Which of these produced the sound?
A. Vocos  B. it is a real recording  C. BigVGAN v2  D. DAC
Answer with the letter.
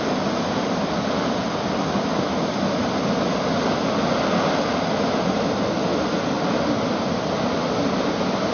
B